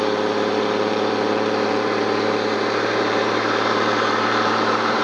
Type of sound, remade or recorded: remade